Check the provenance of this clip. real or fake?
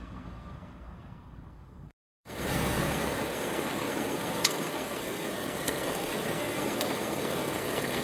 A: fake